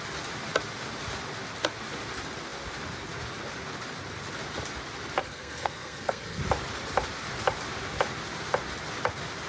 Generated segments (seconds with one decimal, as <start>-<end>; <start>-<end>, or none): 5.2-6.4